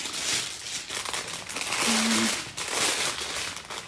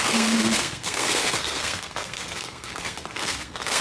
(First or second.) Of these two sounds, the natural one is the first